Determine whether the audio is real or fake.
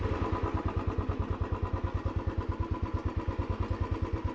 real